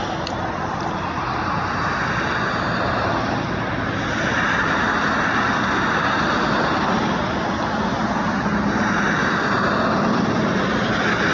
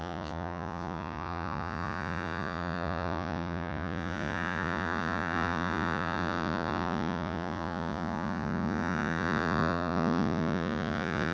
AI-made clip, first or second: second